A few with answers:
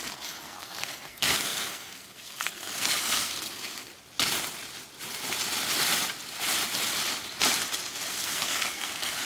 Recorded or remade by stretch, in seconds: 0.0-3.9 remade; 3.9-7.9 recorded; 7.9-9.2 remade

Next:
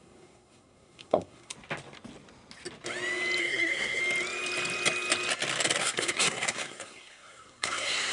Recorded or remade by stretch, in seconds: 0.0-1.5 remade; 1.5-3.4 recorded; 3.4-4.0 remade; 4.0-5.8 recorded; 5.8-8.1 remade

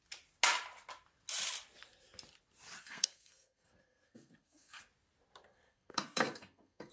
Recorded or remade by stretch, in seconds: 0.0-2.8 recorded; 2.8-4.8 remade; 4.8-5.5 recorded; 5.5-6.9 remade

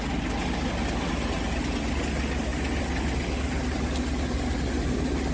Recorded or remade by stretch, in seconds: 0.0-5.3 recorded